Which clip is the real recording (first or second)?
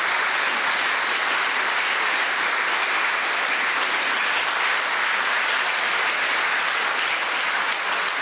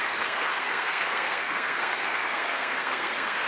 first